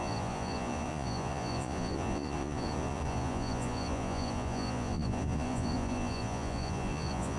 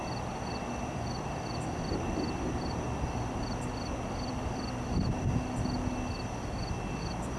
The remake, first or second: first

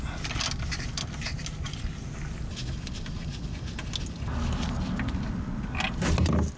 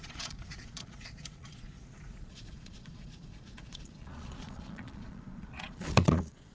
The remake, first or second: second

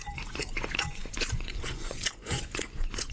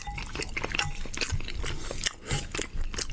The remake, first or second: first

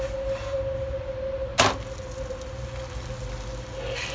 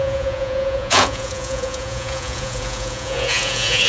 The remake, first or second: second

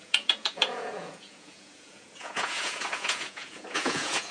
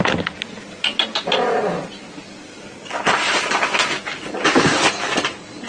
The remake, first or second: first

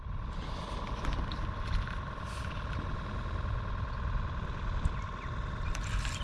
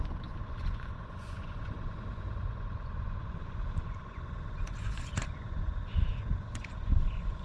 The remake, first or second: second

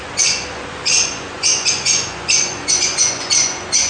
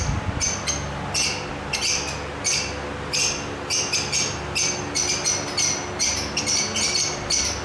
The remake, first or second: first